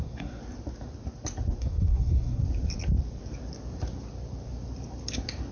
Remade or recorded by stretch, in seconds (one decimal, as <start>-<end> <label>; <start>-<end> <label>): 0.0-0.4 remade; 0.4-1.6 recorded; 1.6-2.4 remade; 2.4-5.5 recorded